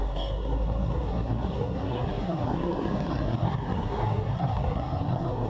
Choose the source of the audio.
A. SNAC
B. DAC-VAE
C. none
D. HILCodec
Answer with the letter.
A